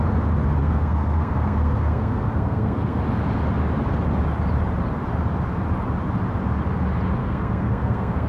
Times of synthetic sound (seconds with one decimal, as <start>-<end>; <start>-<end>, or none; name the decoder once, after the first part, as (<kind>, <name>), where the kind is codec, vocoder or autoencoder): 0.6-3.0 (codec, SNAC); 7.2-8.3